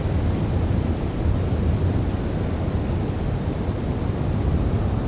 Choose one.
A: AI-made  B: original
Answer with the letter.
B